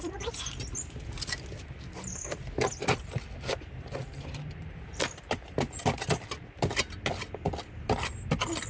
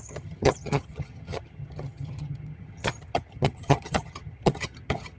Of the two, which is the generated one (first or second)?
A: second